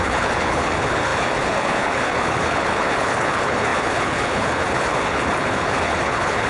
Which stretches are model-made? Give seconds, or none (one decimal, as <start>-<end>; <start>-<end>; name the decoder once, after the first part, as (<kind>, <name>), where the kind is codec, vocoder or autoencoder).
0.0-6.5 (codec, HILCodec)

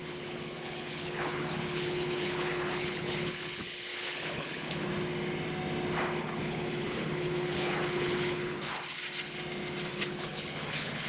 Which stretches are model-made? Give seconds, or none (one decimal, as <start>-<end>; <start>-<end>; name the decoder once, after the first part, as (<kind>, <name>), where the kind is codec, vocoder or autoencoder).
0.0-4.9 (codec, HILCodec); 6.2-8.7; 9.9-11.1